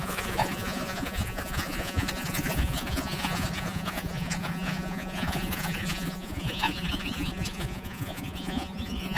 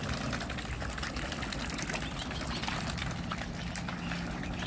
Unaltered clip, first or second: second